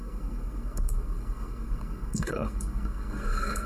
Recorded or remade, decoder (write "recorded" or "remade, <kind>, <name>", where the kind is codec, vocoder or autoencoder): remade, codec, SNAC